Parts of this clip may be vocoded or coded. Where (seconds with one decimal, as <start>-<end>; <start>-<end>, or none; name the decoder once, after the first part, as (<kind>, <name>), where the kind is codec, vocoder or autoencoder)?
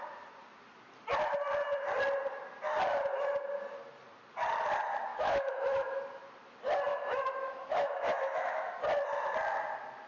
5.1-6.0 (autoencoder, DAC-VAE); 6.9-8.8